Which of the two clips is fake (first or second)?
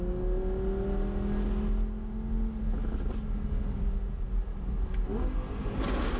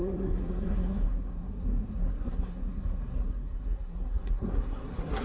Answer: second